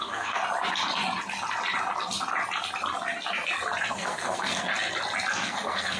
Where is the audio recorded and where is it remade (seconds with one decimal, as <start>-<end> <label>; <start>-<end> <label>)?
0.0-0.4 remade; 0.4-3.9 recorded; 3.9-4.7 remade; 4.7-5.3 recorded; 5.3-6.0 remade

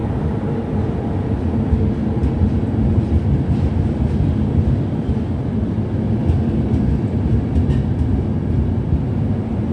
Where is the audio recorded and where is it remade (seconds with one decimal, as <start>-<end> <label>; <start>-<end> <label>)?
0.0-1.4 remade; 1.4-9.7 recorded

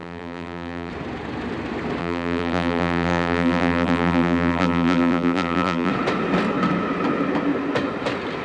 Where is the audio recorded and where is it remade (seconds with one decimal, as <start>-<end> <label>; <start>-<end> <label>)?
0.0-0.9 remade; 0.9-2.0 recorded; 2.0-5.9 remade; 5.9-8.4 recorded

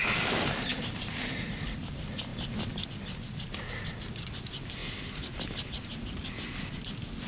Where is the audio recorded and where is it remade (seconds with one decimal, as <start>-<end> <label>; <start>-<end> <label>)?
0.0-0.7 recorded; 0.7-1.5 remade; 1.5-7.3 recorded

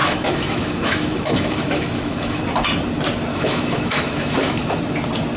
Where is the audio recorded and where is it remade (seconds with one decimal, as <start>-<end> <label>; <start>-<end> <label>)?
0.0-2.4 remade; 2.4-3.3 recorded; 3.3-4.8 remade; 4.8-5.4 recorded

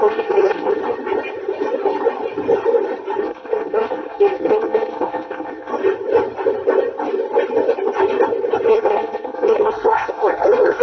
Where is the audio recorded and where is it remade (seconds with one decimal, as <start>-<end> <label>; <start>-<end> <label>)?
0.0-0.8 remade; 0.8-3.2 recorded; 3.2-5.7 remade; 5.7-8.7 recorded; 8.7-10.8 remade

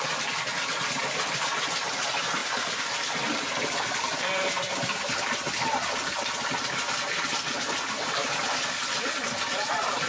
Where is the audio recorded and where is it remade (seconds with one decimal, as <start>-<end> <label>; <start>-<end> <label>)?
0.0-4.1 recorded; 4.1-4.7 remade; 4.7-10.1 recorded